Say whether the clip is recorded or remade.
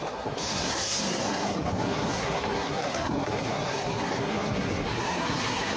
remade